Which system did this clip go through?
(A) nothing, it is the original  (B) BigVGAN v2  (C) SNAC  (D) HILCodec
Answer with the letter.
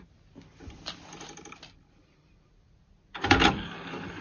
A